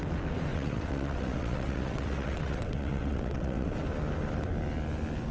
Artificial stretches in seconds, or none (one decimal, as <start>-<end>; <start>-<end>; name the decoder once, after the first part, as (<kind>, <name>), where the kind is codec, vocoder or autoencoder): 0.5-3.7 (vocoder, WaveNeXt)